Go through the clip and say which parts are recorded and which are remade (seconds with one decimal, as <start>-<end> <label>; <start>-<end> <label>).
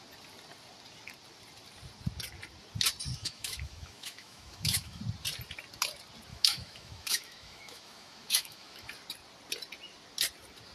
0.0-3.2 recorded; 3.2-5.0 remade; 5.0-6.3 recorded; 6.3-8.9 remade; 8.9-10.7 recorded